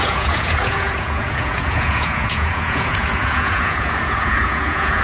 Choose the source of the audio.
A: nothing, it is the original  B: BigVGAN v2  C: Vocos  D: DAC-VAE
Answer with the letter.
C